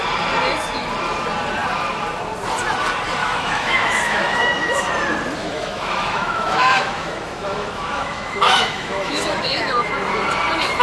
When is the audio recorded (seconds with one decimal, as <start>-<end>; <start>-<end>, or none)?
0.0-3.2; 4.9-5.4; 9.9-10.8